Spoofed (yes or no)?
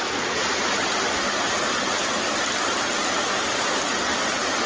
no